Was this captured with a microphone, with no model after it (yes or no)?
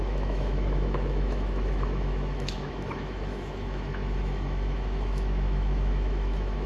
no